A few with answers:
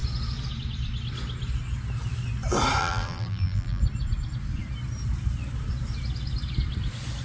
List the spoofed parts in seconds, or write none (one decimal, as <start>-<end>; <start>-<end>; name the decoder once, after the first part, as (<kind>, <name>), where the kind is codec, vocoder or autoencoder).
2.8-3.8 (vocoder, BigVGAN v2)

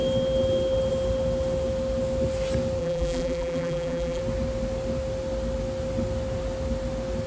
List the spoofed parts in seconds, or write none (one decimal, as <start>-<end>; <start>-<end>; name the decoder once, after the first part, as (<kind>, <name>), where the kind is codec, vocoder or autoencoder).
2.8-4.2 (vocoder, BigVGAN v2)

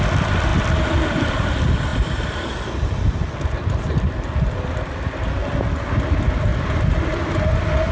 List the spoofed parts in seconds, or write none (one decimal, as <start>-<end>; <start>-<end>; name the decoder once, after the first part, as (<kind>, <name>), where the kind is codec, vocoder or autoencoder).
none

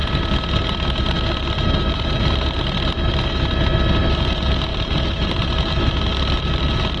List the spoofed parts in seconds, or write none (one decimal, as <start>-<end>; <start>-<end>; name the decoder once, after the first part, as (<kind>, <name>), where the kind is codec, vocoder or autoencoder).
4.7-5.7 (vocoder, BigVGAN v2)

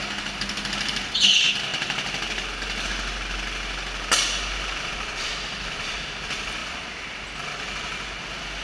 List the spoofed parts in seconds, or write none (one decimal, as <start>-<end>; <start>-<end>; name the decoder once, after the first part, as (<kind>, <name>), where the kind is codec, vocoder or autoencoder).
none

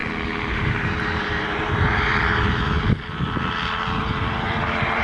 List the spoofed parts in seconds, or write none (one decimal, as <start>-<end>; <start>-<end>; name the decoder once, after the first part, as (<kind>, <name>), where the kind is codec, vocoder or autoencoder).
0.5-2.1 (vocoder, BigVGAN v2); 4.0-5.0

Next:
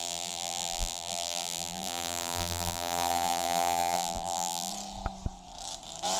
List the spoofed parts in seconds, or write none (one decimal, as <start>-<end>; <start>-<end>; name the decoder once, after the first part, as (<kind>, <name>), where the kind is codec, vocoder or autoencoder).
0.0-4.7 (vocoder, BigVGAN v2)